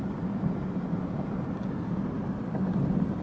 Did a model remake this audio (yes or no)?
no